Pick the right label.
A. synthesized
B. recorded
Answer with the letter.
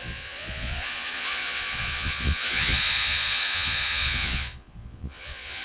A